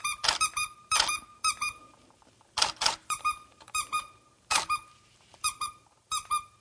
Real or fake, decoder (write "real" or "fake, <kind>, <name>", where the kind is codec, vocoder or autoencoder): fake, vocoder, BigVGAN v2